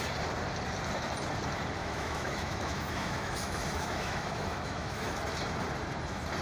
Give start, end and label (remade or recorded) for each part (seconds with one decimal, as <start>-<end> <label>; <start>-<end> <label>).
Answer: 0.0-1.8 recorded; 1.8-5.2 remade; 5.2-6.4 recorded